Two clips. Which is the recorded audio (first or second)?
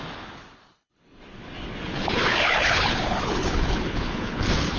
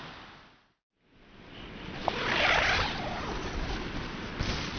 second